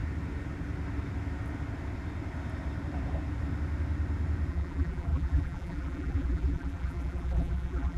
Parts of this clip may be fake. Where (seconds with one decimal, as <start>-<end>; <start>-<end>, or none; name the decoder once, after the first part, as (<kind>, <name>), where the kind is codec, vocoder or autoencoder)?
4.5-8.0 (vocoder, BigVGAN v2)